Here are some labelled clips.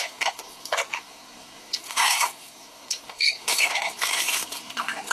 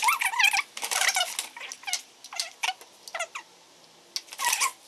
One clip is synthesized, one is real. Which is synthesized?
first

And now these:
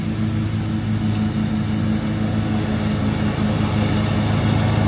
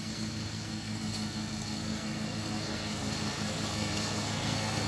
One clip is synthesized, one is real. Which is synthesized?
second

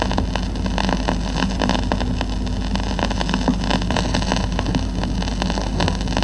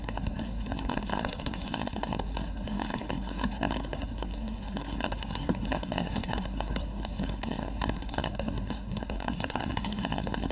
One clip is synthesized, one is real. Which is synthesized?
second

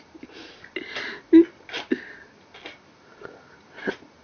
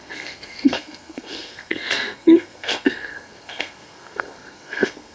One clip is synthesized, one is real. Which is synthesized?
second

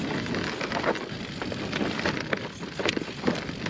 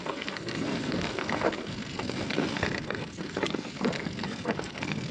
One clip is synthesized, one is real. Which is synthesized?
second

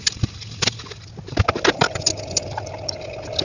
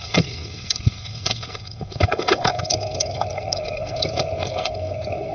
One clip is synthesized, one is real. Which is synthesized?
second